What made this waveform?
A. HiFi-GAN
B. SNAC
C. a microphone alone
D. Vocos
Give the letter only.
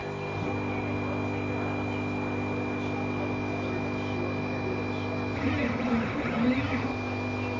C